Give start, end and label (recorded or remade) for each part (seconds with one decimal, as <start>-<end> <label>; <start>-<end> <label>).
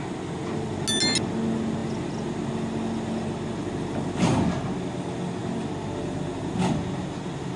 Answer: 0.0-7.6 recorded